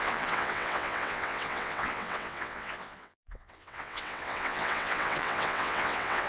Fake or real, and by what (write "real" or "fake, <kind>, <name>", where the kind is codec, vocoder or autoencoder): fake, vocoder, WaveNeXt